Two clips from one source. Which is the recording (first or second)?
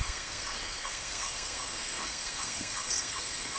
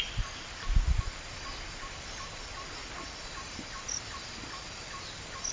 second